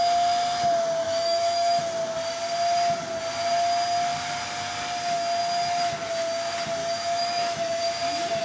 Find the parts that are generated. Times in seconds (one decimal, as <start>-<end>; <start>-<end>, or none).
1.0-1.8; 6.8-7.8